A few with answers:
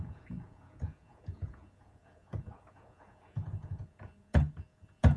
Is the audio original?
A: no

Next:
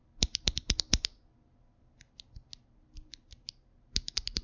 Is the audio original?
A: yes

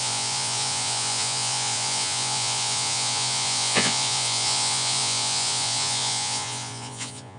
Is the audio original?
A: no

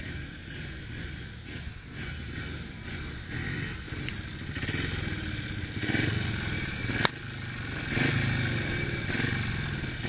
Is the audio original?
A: yes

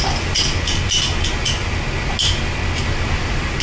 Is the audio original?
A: yes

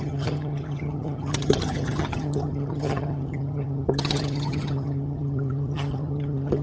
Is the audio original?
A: no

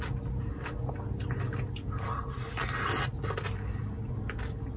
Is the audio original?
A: yes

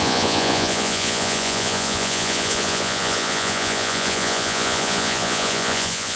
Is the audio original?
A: no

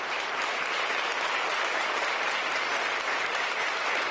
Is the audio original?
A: no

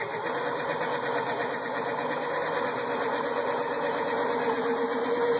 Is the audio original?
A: yes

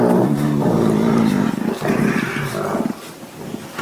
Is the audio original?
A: yes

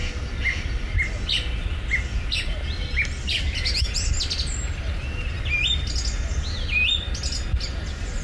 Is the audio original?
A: yes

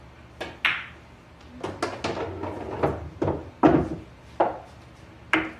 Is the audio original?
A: yes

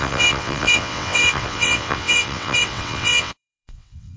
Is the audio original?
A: no